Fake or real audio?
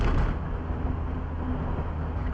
real